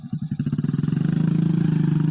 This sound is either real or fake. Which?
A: real